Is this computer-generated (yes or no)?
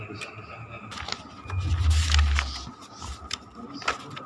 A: no